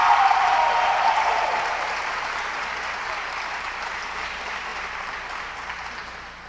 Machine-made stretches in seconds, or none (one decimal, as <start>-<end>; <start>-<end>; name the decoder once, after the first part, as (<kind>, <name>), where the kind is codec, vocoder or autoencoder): 4.7-5.4 (vocoder, BigVGAN v2)

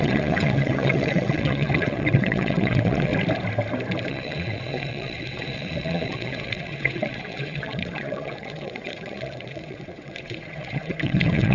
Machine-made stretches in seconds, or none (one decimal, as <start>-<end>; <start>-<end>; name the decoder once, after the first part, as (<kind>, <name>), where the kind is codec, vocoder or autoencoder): 0.0-3.1 (vocoder, WaveNeXt); 4.1-11.5

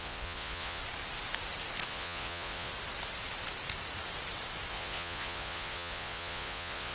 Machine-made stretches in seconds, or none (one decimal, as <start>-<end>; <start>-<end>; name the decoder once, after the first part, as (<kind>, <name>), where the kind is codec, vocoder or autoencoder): 0.0-0.8 (vocoder, Vocos); 1.9-2.7; 4.7-6.9

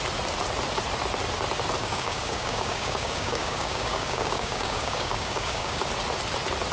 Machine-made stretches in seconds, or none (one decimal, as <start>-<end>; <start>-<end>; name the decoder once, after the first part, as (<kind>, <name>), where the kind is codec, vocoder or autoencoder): 1.8-5.8 (codec, DAC)